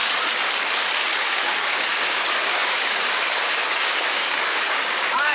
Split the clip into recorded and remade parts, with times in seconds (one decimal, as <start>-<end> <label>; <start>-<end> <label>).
0.0-1.2 recorded; 1.2-5.3 remade